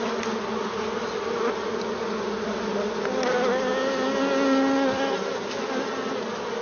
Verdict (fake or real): real